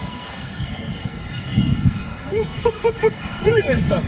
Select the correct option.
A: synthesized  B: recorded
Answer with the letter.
A